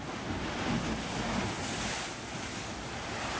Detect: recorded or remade recorded